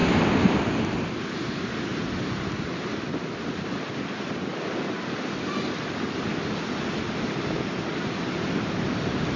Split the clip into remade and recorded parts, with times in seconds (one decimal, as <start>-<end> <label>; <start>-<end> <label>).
0.0-9.4 recorded